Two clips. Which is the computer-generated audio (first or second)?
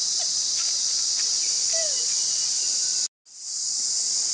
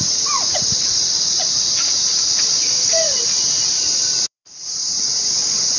second